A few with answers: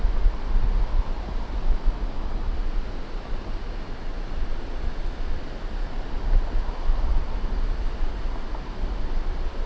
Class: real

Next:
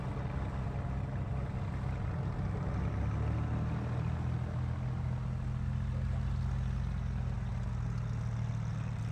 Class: real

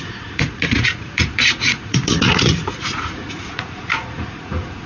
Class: fake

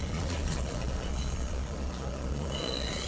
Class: fake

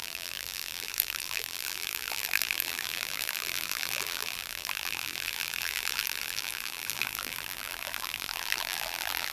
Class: fake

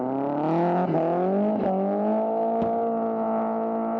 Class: real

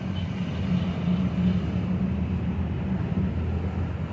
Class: real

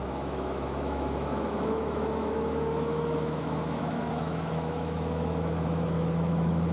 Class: fake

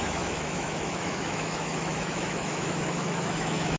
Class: fake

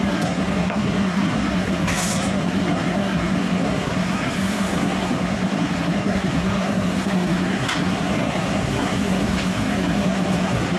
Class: fake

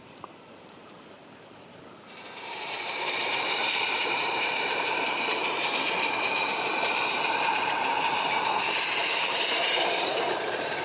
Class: fake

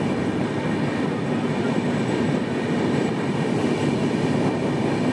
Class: real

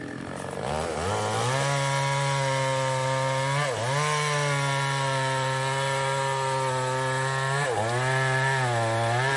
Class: real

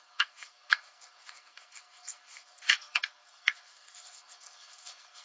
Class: fake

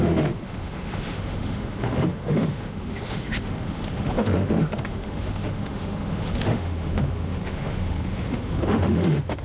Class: fake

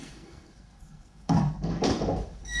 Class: fake